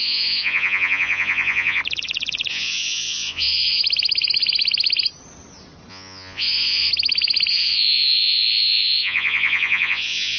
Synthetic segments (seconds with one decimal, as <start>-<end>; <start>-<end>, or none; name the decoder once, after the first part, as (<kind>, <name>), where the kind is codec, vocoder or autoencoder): 0.0-1.8 (vocoder, Vocos); 2.5-3.8; 5.9-6.9; 7.5-10.4